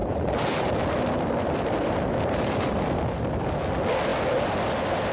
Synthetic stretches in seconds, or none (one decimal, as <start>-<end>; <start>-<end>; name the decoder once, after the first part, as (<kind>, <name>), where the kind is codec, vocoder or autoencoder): 0.0-3.0 (vocoder, BigVGAN v2)